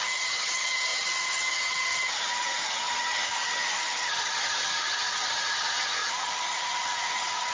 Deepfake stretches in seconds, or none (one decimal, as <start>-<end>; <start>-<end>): 0.0-7.5